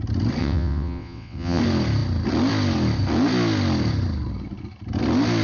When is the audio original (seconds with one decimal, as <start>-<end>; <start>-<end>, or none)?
0.0-0.4; 1.6-5.4